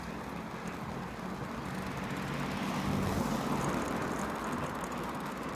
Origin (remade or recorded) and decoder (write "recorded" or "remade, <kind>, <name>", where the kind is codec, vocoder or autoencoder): recorded